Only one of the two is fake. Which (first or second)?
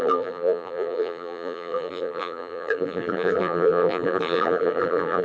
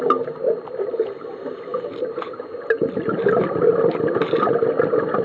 first